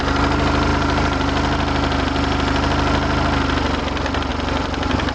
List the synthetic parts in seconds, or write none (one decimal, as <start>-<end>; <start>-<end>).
4.3-5.1